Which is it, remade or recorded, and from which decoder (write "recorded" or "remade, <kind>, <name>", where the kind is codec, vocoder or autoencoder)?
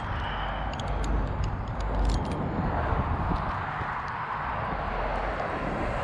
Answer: recorded